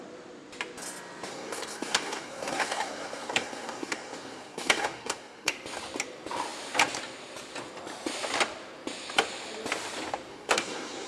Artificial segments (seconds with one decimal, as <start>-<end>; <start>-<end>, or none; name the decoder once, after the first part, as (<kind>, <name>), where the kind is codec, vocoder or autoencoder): 1.3-5.5 (codec, SNAC); 10.3-11.1